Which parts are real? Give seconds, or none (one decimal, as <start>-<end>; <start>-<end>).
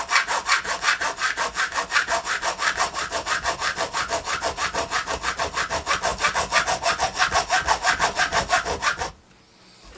0.0-1.2; 5.3-10.0